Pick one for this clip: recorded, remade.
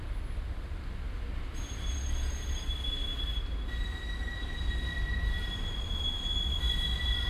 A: recorded